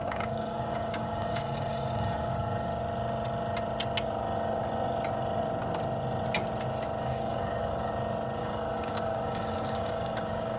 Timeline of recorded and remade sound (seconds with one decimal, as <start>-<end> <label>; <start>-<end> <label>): 0.0-2.7 remade; 2.7-7.0 recorded; 7.0-7.9 remade; 7.9-8.4 recorded; 8.4-10.6 remade